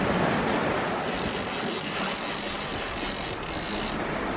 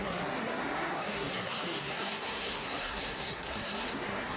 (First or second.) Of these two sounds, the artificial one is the second